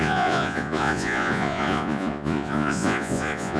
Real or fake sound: fake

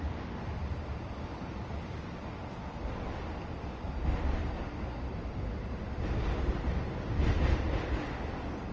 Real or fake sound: real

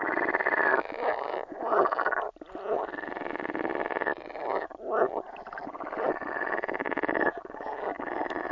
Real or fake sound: real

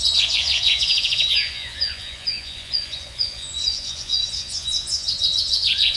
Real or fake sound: fake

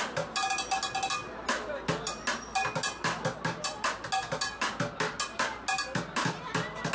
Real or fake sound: real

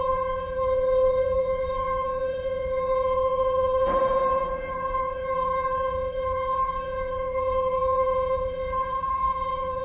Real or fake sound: fake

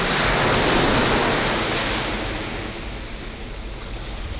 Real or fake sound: real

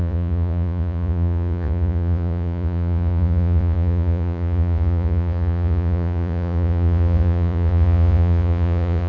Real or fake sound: fake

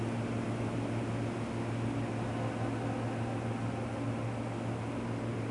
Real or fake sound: real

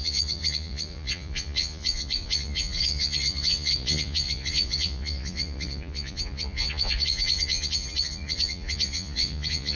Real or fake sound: fake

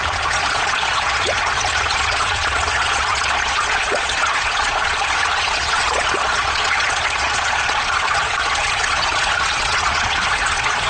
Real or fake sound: fake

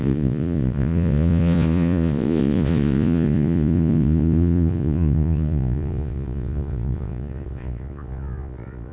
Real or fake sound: fake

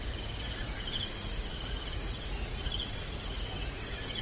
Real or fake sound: fake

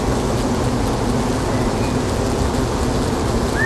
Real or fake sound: real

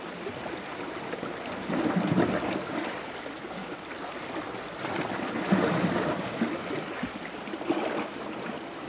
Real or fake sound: real